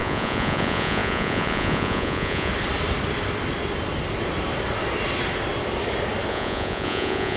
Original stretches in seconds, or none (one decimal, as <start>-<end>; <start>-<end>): 2.5-6.3